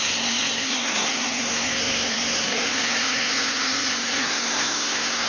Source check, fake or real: fake